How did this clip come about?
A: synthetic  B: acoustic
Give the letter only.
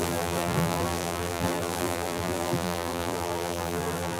A